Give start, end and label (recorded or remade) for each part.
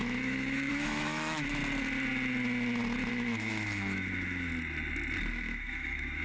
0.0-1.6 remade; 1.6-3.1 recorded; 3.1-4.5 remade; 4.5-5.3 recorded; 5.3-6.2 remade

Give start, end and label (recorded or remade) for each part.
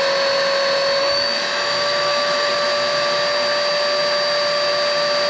0.0-1.0 recorded; 1.0-2.5 remade; 2.5-5.3 recorded